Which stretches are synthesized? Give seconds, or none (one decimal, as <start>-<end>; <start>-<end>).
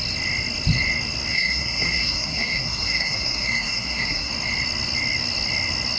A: 1.3-4.3